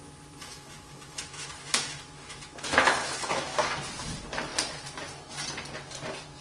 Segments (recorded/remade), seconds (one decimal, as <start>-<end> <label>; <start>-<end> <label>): 0.0-0.5 recorded; 0.5-3.6 remade; 3.6-6.4 recorded